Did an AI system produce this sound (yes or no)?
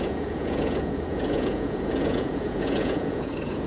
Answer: yes